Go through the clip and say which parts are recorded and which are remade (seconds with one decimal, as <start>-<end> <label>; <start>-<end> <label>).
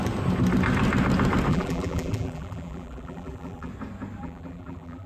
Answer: 0.0-1.5 recorded; 1.5-3.7 remade; 3.7-4.2 recorded; 4.2-5.1 remade